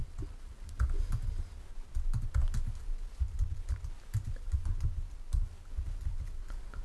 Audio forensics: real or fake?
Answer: real